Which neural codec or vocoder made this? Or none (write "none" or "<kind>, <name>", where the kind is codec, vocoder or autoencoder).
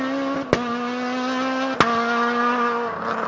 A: none